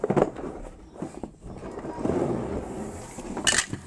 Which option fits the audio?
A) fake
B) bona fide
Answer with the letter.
B